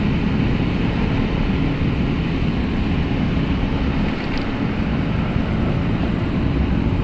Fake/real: real